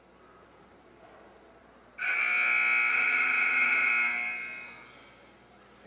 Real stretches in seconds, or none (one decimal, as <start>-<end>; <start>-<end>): 0.0-2.9; 3.9-5.9